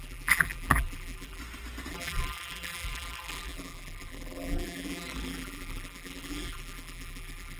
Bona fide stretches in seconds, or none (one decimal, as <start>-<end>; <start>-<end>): 1.4-1.9